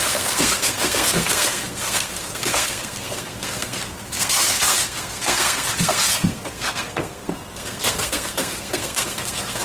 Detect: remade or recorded remade